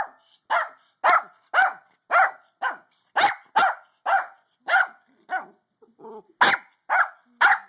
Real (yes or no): yes